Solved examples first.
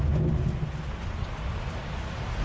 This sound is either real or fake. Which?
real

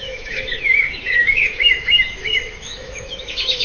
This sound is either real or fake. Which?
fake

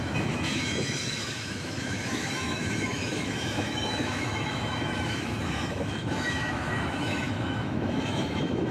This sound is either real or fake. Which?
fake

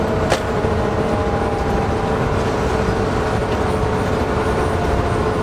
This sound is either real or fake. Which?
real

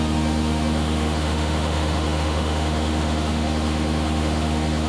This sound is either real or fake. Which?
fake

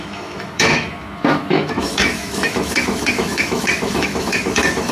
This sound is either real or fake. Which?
fake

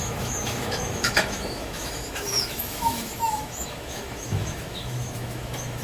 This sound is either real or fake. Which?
fake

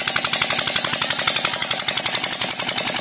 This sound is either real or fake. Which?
real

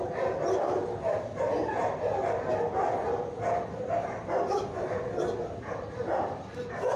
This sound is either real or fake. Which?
real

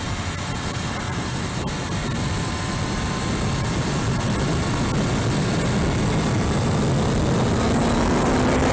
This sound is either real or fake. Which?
real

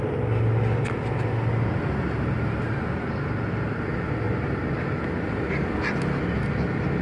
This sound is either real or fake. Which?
real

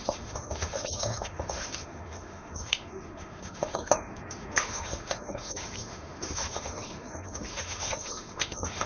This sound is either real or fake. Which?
fake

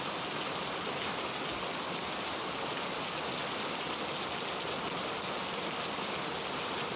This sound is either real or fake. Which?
real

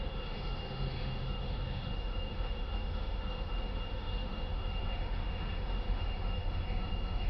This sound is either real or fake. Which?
fake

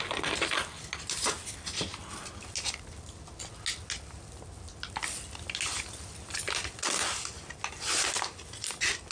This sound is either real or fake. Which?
real